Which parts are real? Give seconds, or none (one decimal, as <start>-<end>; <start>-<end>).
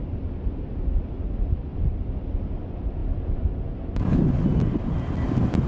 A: 0.0-5.7